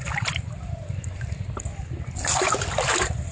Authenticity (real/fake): fake